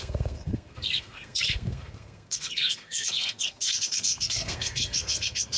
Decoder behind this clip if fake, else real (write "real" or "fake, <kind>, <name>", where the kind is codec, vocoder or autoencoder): fake, codec, SNAC